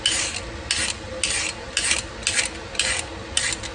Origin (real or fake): real